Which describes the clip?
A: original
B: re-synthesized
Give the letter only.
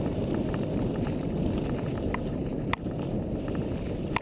A